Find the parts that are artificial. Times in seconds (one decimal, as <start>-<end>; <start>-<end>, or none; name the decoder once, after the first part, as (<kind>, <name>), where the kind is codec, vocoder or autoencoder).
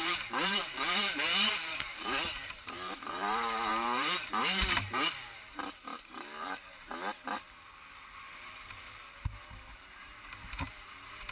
0.0-6.9 (vocoder, BigVGAN v2); 8.2-11.3